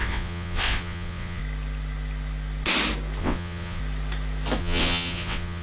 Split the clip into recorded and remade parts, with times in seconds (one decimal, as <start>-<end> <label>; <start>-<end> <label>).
0.0-1.4 remade; 1.4-3.2 recorded; 3.2-3.8 remade; 3.8-4.6 recorded; 4.6-5.6 remade